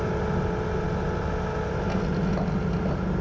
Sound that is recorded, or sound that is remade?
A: recorded